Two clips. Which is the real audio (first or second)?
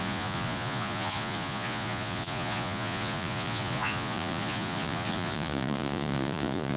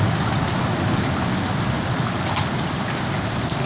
second